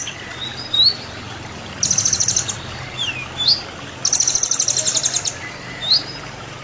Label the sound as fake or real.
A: real